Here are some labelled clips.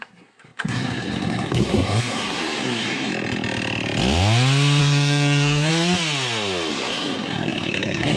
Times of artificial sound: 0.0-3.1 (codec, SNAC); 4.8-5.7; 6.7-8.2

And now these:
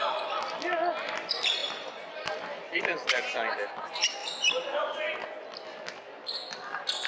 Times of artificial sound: 1.6-2.8 (vocoder, BigVGAN v2); 4.2-5.0